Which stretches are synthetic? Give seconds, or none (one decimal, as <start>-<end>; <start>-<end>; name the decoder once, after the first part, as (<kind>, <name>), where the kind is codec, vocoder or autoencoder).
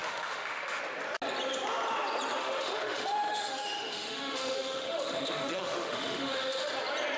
0.0-0.8 (autoencoder, DAC-VAE); 2.4-6.7